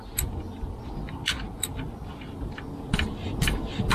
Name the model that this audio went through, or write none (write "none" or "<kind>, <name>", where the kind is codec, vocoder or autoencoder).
none